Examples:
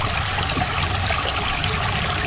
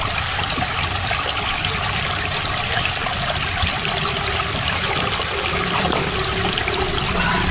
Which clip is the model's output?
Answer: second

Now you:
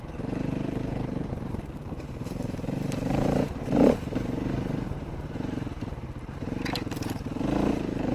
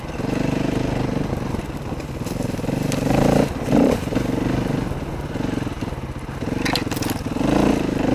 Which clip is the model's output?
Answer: first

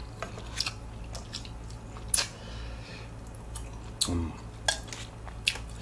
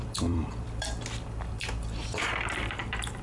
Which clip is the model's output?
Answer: second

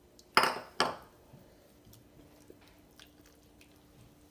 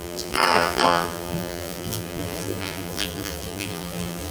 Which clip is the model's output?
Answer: second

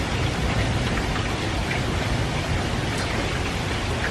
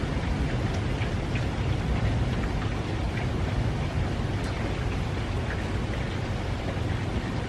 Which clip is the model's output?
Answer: first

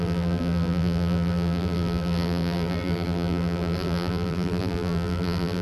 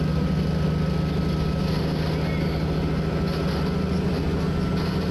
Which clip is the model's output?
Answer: first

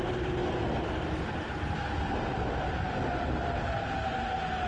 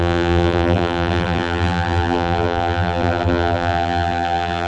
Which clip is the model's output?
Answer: second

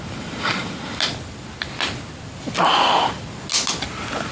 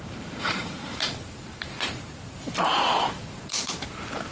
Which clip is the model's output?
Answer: second